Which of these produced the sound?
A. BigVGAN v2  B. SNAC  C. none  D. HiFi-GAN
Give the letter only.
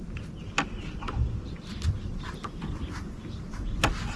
C